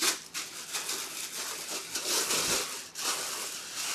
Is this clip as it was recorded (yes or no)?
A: yes